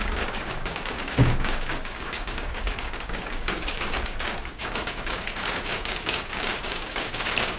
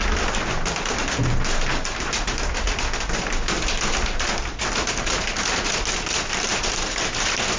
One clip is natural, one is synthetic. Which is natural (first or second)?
second